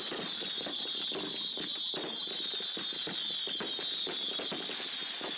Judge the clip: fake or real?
real